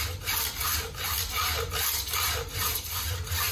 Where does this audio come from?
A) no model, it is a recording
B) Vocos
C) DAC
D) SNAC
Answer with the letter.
A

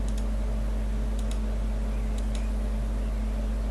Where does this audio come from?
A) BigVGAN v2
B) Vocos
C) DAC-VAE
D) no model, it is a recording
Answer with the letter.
D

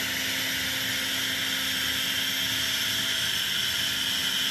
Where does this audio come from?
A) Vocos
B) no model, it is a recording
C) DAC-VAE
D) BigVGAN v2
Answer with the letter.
B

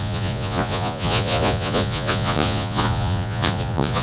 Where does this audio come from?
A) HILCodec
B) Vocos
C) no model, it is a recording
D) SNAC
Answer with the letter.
B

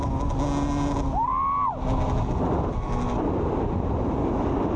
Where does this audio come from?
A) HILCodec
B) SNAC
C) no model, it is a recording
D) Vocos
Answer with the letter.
C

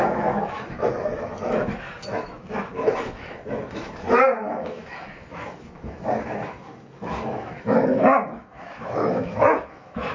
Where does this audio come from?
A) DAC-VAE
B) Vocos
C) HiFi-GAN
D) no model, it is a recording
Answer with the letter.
A